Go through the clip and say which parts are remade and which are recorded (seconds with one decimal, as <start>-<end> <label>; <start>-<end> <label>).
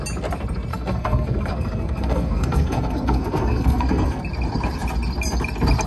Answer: 0.0-0.7 recorded; 0.7-4.2 remade; 4.2-5.9 recorded